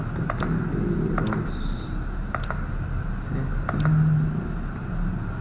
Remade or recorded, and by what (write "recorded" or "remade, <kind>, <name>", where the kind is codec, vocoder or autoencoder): recorded